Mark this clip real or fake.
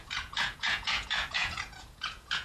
fake